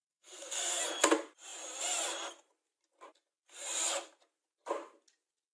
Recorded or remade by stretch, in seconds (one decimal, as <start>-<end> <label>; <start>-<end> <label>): 0.0-0.8 remade; 0.8-5.5 recorded